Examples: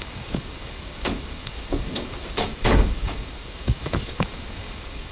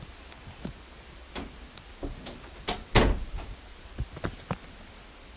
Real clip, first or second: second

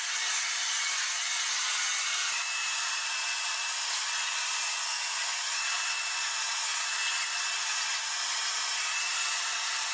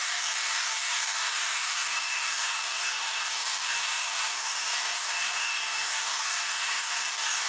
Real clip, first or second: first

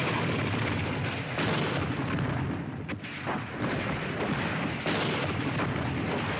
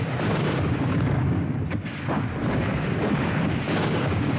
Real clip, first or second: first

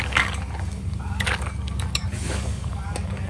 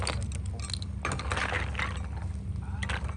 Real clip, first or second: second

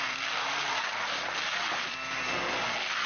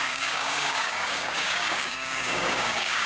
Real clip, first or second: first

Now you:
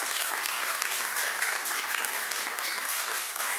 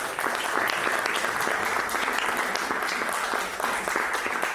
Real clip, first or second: second